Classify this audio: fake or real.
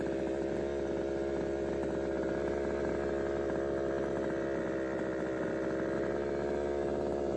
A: real